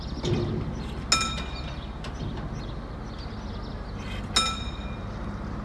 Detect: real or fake real